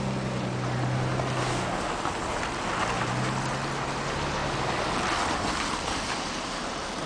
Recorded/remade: recorded